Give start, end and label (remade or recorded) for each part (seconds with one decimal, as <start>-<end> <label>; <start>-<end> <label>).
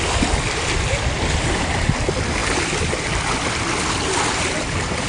0.0-5.1 recorded